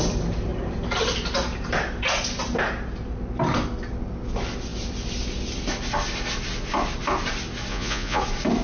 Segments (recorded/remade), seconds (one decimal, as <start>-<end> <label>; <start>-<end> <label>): 0.0-7.7 recorded; 7.7-8.2 remade; 8.2-8.6 recorded